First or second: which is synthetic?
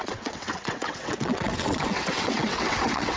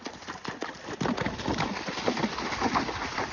first